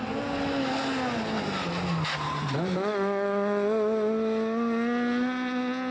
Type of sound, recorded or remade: recorded